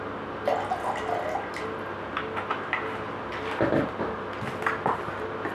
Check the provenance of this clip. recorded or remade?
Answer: recorded